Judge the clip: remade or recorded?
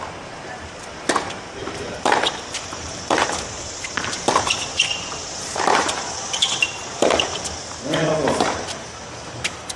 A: remade